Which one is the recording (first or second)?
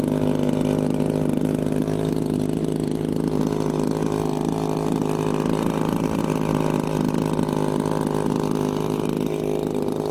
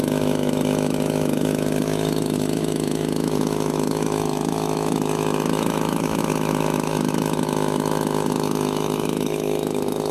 first